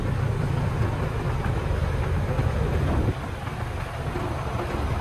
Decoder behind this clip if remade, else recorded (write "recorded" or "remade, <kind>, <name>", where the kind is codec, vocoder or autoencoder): recorded